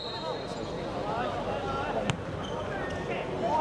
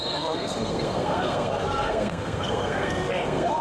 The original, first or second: first